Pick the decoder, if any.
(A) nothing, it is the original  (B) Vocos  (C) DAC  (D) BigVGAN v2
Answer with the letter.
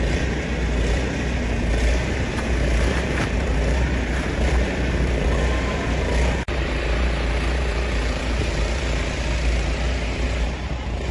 D